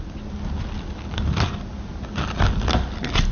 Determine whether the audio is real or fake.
real